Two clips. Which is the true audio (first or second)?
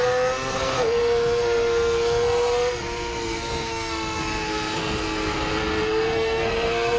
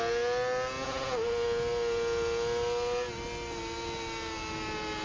second